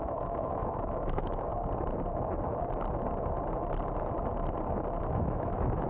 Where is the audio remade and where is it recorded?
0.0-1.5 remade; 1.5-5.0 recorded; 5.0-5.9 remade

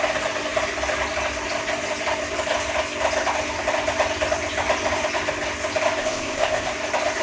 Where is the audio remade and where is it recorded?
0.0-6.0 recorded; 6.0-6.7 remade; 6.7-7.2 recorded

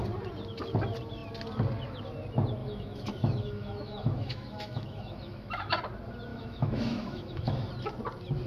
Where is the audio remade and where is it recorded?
0.0-2.6 recorded; 2.6-5.8 remade; 5.8-6.3 recorded; 6.3-7.7 remade; 7.7-8.5 recorded

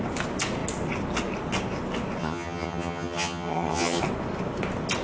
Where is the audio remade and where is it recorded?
0.0-2.2 recorded; 2.2-4.0 remade; 4.0-5.0 recorded

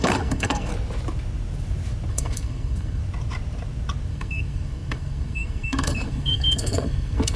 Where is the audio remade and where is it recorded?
0.0-0.7 remade; 0.7-2.1 recorded; 2.1-3.0 remade; 3.0-4.1 recorded; 4.1-7.4 remade